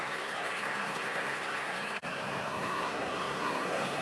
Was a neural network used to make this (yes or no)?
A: yes